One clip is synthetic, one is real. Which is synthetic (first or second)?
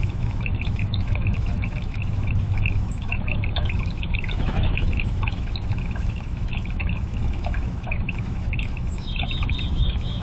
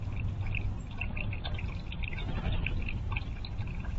first